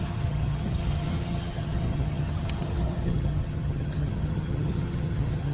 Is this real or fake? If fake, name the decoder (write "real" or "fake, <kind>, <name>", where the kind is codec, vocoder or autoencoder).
fake, vocoder, HiFi-GAN